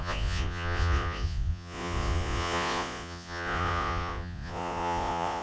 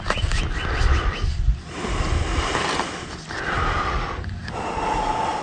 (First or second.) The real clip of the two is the second